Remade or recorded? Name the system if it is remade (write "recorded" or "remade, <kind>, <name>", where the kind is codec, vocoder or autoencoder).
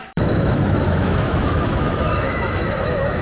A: remade, autoencoder, DAC-VAE